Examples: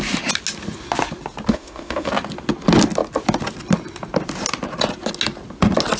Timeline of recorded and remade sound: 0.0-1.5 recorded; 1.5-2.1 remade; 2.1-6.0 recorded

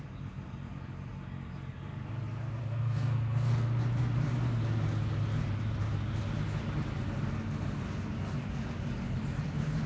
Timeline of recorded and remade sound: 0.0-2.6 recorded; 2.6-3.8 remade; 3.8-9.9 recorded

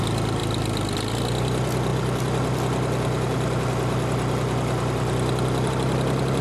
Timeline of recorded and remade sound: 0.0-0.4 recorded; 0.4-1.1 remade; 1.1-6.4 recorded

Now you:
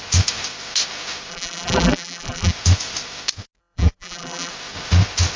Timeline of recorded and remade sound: 0.0-1.3 recorded; 1.3-2.5 remade; 2.5-3.6 recorded; 3.6-4.5 remade; 4.5-5.4 recorded

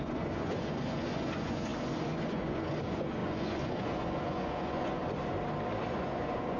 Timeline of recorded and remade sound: 0.0-5.0 remade; 5.0-5.9 recorded; 5.9-6.6 remade

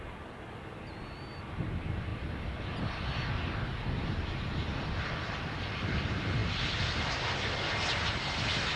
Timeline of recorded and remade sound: 0.0-8.8 recorded

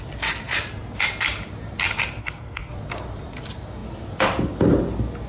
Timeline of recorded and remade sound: 0.0-2.2 recorded; 2.2-2.7 remade; 2.7-5.3 recorded

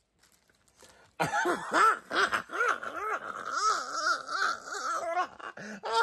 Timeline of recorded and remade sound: 0.0-6.0 recorded